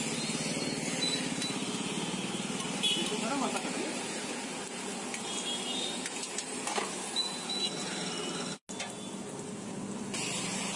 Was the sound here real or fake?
real